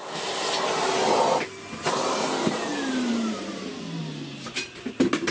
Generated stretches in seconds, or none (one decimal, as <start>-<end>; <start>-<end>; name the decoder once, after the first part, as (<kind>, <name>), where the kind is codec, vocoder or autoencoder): 2.7-4.0 (vocoder, BigVGAN v2)